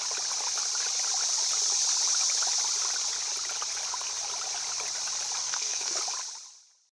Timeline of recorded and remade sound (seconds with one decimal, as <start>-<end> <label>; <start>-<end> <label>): 0.0-5.4 recorded; 5.4-6.0 remade; 6.0-7.0 recorded